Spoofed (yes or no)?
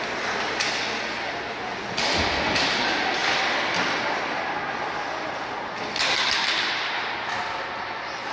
no